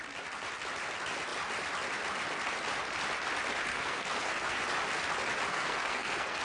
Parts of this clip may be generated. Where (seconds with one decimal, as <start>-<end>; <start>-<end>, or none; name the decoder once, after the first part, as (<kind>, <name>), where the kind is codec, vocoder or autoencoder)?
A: 3.7-4.6 (codec, SNAC); 5.5-6.4